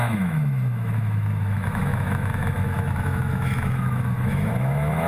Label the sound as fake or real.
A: fake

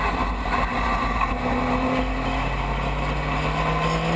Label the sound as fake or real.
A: real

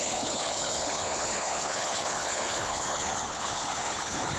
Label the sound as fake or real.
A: fake